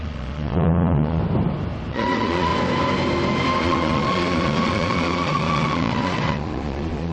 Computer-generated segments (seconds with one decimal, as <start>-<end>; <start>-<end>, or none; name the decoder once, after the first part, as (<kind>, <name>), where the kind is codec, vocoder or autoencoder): 0.0-1.2 (vocoder, Vocos); 1.9-2.5; 3.6-7.1